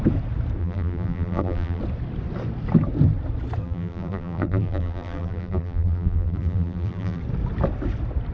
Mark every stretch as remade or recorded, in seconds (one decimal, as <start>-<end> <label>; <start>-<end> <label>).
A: 0.0-0.6 recorded; 0.6-1.8 remade; 1.8-3.6 recorded; 3.6-7.2 remade; 7.2-8.3 recorded

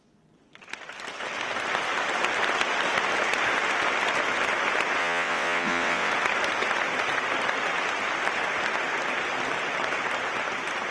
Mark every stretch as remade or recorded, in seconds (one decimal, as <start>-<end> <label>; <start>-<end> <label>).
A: 0.0-5.0 recorded; 5.0-6.1 remade; 6.1-10.9 recorded

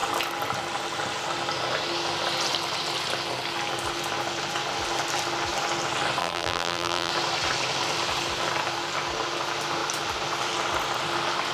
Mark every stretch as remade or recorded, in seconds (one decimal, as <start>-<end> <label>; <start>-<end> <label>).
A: 0.0-6.2 recorded; 6.2-7.1 remade; 7.1-11.5 recorded